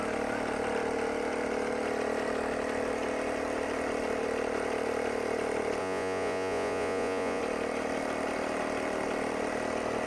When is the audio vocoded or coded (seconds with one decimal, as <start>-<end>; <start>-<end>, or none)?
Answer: 5.8-7.4